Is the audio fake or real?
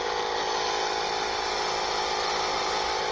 real